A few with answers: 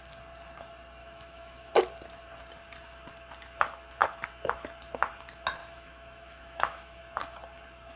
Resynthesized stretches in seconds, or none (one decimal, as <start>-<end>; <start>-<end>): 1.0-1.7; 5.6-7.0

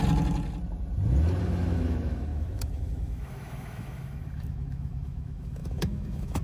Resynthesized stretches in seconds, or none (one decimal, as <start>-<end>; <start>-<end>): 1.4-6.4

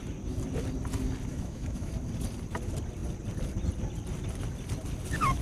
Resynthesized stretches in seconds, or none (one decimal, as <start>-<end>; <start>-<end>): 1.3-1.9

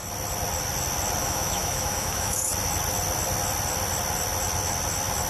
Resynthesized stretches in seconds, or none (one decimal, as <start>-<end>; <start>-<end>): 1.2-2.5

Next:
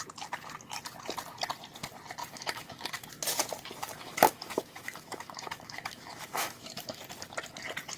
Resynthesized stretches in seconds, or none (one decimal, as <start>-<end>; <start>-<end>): 2.2-3.1; 3.8-7.0